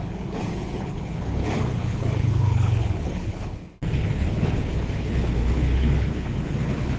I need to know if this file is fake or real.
fake